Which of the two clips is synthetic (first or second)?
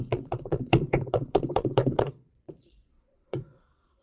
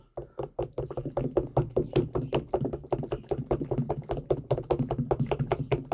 first